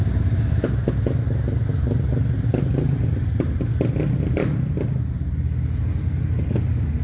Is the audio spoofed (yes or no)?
no